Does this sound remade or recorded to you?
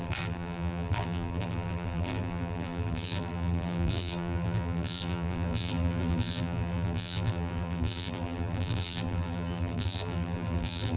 remade